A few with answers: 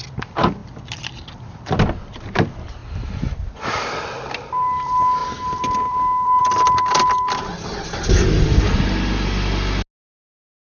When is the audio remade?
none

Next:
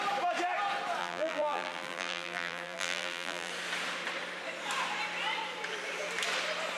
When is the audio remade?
1.0-3.5 (vocoder, BigVGAN v2)